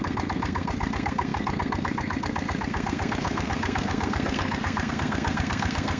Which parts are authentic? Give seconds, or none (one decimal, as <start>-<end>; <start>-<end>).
none